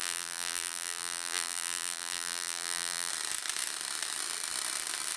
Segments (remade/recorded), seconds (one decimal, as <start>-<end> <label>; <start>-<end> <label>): 0.0-3.1 remade; 3.1-5.2 recorded